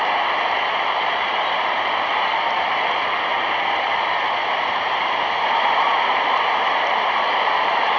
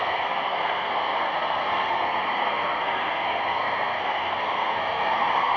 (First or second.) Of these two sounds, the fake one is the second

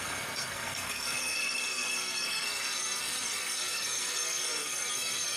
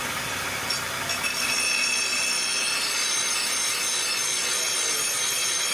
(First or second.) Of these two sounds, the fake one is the first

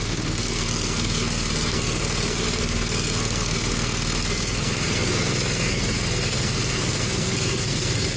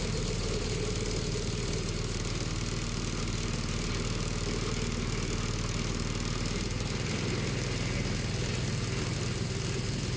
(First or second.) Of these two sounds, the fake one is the first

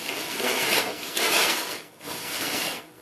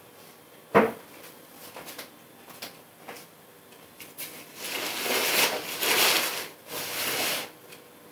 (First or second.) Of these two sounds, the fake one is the first